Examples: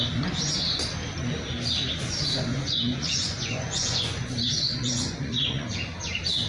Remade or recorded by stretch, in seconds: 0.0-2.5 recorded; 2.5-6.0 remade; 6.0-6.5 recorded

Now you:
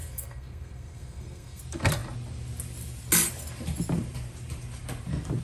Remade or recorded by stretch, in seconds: 0.0-1.6 remade; 1.6-5.4 recorded

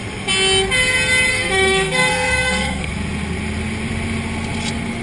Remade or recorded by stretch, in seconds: 0.0-1.3 recorded; 1.3-2.9 remade; 2.9-5.0 recorded

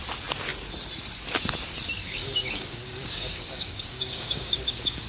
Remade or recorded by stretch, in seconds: 0.0-2.0 recorded; 2.0-5.1 remade